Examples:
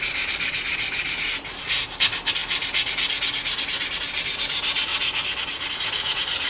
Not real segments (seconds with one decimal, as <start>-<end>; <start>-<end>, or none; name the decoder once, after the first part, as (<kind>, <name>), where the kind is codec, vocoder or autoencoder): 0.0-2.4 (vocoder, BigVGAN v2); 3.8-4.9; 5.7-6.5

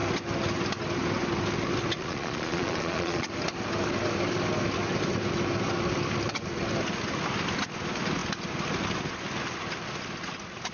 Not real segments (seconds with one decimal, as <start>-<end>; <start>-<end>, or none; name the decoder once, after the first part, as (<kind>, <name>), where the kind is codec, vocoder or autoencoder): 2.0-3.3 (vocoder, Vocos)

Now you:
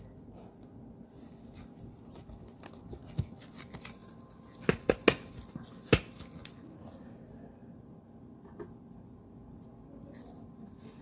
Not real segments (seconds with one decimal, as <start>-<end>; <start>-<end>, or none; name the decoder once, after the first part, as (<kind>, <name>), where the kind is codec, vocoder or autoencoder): none

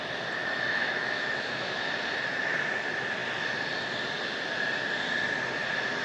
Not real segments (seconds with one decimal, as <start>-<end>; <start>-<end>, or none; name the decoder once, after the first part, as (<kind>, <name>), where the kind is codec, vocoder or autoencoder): 0.4-1.9 (autoencoder, DAC-VAE)